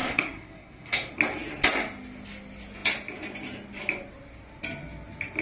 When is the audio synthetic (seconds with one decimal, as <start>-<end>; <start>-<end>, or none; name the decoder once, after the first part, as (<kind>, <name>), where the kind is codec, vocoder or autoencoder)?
0.0-1.1 (codec, SNAC)

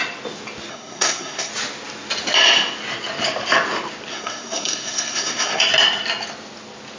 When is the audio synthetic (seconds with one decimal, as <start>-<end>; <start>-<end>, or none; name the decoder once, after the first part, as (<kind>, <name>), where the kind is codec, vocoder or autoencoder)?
0.7-1.5 (codec, SNAC); 4.1-5.6

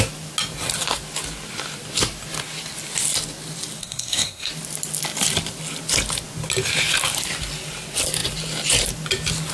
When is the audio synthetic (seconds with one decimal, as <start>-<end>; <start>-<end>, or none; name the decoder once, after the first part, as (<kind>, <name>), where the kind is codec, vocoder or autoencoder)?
3.8-4.5 (codec, SNAC)

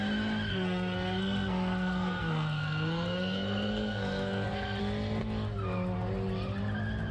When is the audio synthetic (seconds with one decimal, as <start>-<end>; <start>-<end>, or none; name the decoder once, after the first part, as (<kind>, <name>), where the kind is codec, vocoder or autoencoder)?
0.5-4.8 (codec, SNAC)

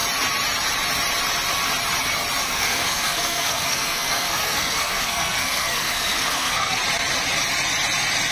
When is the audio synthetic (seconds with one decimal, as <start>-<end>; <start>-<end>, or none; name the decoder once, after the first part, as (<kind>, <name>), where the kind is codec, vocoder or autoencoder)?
2.4-6.8 (codec, SNAC)

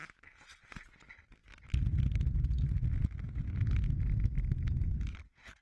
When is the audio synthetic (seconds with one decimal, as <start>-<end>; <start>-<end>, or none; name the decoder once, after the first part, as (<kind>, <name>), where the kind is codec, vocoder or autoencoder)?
none

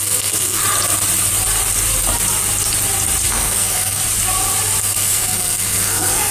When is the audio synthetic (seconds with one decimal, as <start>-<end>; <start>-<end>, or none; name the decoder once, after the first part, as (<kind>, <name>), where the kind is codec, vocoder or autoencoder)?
0.0-0.6 (codec, SNAC); 3.3-4.0; 4.8-6.3